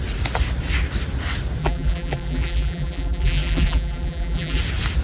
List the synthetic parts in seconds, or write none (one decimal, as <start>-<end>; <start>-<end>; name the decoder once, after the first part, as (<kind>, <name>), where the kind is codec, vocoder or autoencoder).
1.6-4.6 (vocoder, BigVGAN v2)